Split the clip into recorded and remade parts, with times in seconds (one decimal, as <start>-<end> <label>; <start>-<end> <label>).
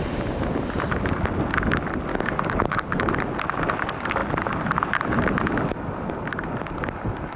0.0-2.1 recorded; 2.1-3.1 remade; 3.1-7.4 recorded